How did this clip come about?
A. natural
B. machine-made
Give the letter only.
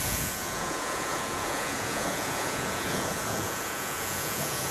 B